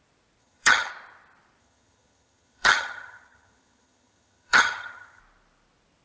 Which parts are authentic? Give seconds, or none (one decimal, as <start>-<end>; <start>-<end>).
0.0-0.4; 0.9-1.6; 5.2-6.0

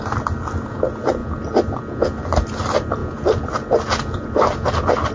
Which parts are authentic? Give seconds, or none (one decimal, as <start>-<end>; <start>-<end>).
0.0-5.1

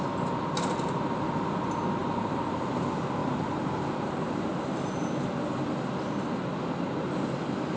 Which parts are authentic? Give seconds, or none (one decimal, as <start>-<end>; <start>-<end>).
0.0-2.0; 2.7-3.2; 5.3-7.8